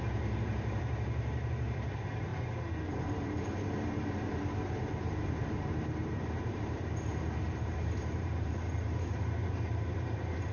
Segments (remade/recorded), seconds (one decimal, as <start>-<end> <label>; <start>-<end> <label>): 0.0-2.3 remade; 2.3-2.9 recorded; 2.9-10.5 remade